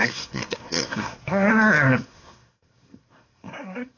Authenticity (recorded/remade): remade